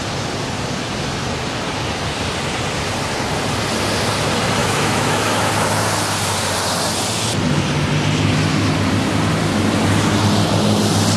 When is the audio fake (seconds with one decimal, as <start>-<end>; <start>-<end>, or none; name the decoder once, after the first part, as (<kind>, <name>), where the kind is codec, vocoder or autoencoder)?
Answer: 4.6-5.5 (autoencoder, DAC-VAE)